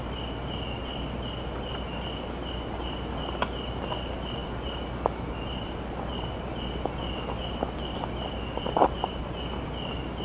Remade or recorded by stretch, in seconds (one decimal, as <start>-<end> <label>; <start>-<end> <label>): 0.0-10.2 recorded